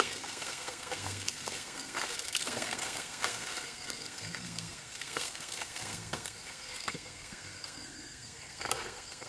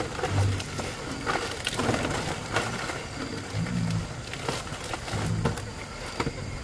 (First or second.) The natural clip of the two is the second